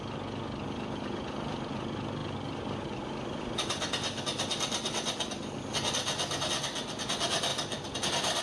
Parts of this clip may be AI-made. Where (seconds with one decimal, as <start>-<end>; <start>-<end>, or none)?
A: 7.5-8.4